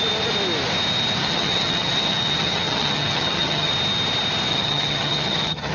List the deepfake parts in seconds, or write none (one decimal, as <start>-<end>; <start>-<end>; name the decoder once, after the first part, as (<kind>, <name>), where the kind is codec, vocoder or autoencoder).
1.2-3.7 (vocoder, HiFi-GAN); 4.5-5.7